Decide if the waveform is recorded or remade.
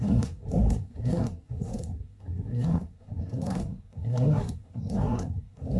remade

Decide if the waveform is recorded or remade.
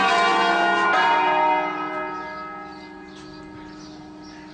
recorded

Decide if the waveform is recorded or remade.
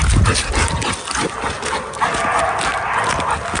recorded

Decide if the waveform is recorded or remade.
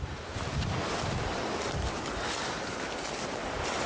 recorded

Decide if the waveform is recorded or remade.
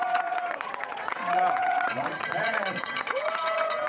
remade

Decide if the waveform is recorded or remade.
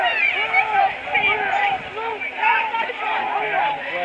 recorded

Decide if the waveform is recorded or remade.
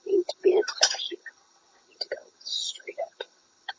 remade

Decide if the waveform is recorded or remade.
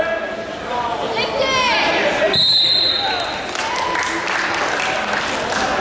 recorded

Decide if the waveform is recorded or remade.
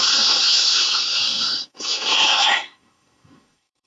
remade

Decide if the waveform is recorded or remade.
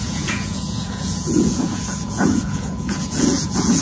remade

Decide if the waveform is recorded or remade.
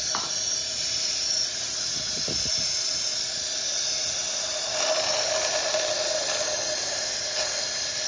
recorded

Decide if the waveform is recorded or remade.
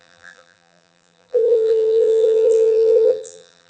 remade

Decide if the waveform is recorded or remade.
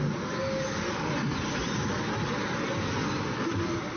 recorded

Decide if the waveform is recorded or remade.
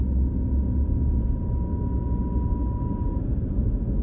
recorded